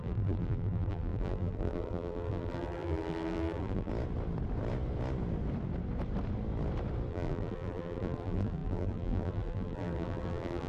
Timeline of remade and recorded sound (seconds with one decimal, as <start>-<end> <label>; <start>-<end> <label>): 0.0-3.9 remade; 3.9-7.1 recorded; 7.1-10.7 remade